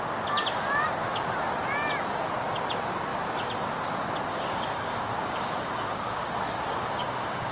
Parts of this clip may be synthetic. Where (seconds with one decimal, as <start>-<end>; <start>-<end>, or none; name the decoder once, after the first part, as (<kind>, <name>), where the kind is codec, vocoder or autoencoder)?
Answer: 4.3-7.5 (codec, DAC)